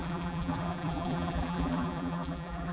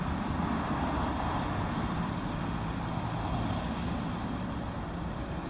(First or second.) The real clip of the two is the second